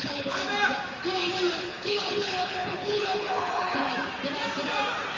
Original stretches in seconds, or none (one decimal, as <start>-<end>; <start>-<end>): 0.4-1.6; 3.9-5.2